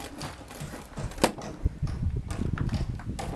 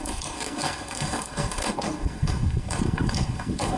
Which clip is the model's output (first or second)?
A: second